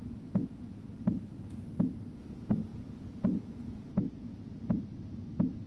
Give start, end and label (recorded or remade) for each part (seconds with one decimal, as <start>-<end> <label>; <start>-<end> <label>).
0.0-1.0 remade; 1.0-2.7 recorded; 2.7-4.8 remade; 4.8-5.7 recorded